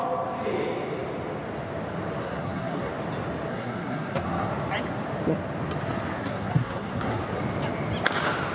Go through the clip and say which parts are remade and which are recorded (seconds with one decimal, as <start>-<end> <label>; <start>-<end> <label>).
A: 0.0-2.2 recorded; 2.2-2.9 remade; 2.9-3.5 recorded; 3.5-4.5 remade; 4.5-6.2 recorded; 6.2-7.2 remade; 7.2-8.5 recorded